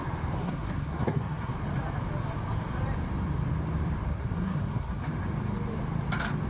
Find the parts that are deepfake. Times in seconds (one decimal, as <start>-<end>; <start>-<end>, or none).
0.4-1.5; 4.1-5.1